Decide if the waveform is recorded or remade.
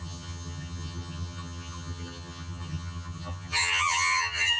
remade